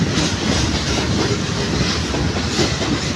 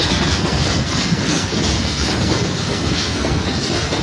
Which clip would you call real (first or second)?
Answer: first